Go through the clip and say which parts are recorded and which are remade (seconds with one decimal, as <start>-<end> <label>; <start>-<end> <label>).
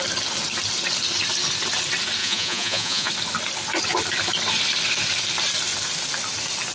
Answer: 0.0-2.2 recorded; 2.2-3.1 remade; 3.1-6.7 recorded